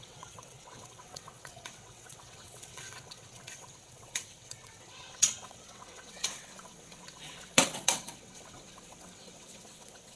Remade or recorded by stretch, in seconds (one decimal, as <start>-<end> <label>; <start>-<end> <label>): 0.0-10.2 remade